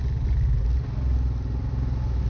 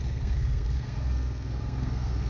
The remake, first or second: second